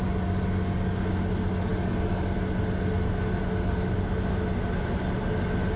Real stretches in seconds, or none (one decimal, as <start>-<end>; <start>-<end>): 0.0-5.8